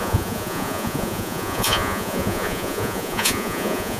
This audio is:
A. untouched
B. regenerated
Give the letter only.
B